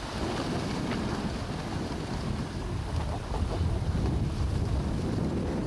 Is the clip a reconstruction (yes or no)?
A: no